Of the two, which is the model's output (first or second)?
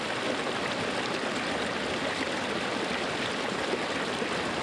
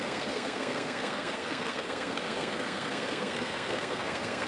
second